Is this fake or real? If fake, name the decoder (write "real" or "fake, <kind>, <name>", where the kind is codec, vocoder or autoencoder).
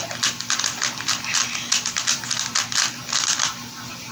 fake, vocoder, BigVGAN v2